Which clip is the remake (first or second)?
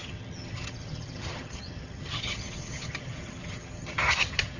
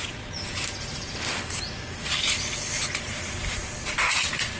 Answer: first